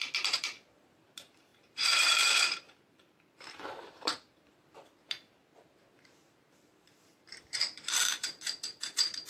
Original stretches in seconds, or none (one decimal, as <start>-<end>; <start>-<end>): none